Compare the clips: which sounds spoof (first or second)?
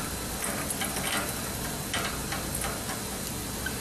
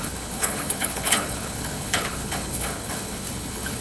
second